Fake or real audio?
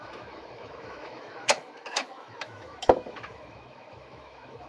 fake